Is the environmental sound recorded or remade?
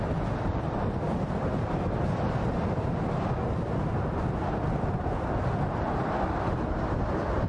recorded